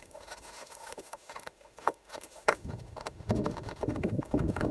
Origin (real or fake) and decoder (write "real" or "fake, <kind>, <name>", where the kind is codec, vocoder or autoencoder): fake, autoencoder, DAC-VAE